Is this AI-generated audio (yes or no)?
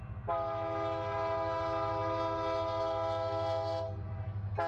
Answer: no